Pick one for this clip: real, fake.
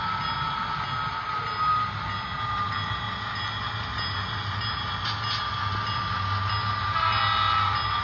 real